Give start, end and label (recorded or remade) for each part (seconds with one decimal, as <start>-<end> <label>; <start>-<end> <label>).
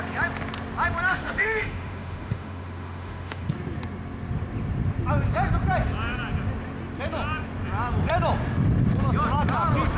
0.0-1.1 recorded; 1.1-3.5 remade; 3.5-10.0 recorded